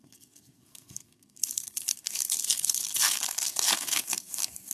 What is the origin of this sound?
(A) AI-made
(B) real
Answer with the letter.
A